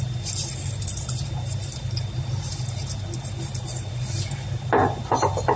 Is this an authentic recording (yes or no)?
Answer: yes